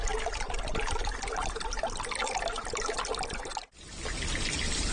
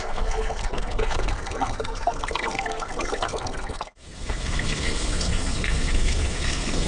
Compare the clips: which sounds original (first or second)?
first